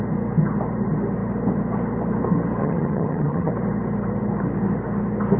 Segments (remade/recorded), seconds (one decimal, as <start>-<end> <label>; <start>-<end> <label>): 0.0-2.6 recorded; 2.6-3.5 remade; 3.5-5.4 recorded